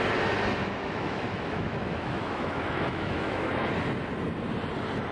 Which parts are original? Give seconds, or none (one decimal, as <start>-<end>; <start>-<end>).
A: 0.0-0.6; 3.7-5.1